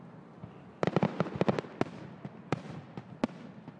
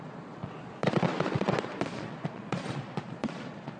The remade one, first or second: second